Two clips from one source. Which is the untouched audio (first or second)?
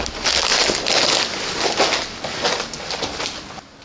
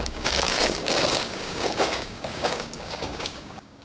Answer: first